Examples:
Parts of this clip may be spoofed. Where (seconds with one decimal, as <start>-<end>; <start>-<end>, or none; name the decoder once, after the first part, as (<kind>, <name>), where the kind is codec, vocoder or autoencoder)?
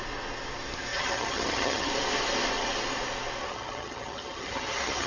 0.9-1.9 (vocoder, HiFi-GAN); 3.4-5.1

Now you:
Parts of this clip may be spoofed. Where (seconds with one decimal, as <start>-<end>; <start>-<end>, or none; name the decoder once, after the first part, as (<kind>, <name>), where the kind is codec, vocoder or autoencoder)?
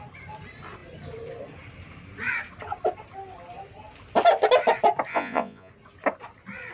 5.1-5.7 (vocoder, Vocos)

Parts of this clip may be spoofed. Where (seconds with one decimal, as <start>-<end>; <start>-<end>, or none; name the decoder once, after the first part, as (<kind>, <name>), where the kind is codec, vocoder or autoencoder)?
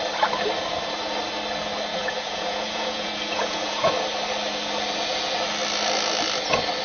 1.9-3.9 (vocoder, Vocos)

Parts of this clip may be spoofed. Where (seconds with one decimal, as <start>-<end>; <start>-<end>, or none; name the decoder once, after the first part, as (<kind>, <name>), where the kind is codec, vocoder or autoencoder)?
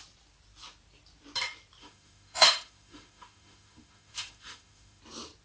1.8-5.0 (autoencoder, DAC-VAE)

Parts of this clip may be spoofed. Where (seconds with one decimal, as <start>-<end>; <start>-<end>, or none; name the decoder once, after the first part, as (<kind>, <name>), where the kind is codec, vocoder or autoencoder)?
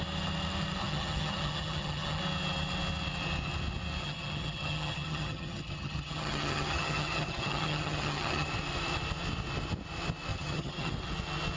0.8-2.2 (vocoder, HiFi-GAN); 4.0-8.5; 10.3-10.9